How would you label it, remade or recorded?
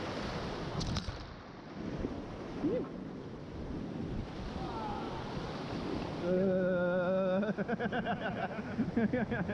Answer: recorded